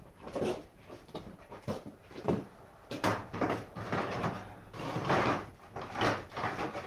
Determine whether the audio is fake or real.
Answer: fake